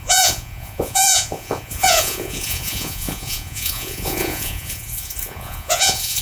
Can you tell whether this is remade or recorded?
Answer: remade